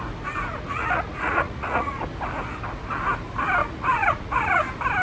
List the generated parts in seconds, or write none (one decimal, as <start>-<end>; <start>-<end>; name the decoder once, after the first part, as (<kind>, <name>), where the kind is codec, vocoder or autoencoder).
0.5-2.0 (vocoder, Vocos); 3.6-4.6